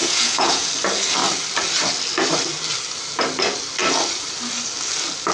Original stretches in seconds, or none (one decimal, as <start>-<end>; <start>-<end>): 0.7-5.3